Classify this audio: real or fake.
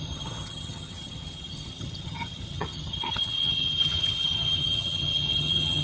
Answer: fake